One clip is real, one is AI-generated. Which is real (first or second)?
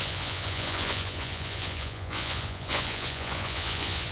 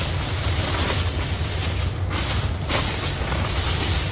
second